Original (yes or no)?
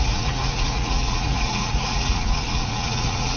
no